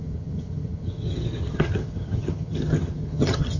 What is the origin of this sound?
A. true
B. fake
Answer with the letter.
B